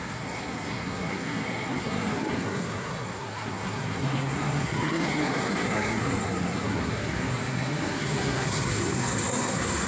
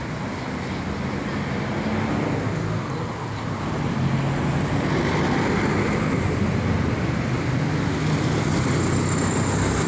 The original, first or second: second